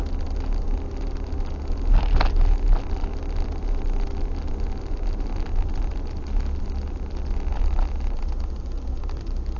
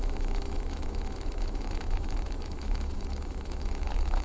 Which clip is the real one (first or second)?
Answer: first